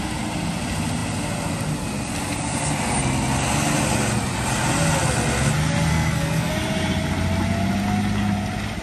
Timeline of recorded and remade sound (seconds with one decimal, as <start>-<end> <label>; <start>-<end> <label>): 0.0-5.9 recorded; 5.9-6.5 remade; 6.5-8.8 recorded